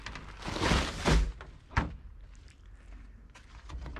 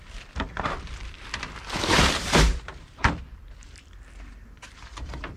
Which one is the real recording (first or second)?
first